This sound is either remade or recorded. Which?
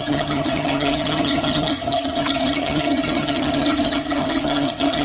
remade